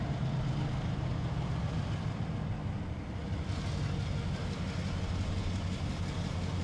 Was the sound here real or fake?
real